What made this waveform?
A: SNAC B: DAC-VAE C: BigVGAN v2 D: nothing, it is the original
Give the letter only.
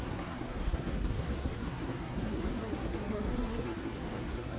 A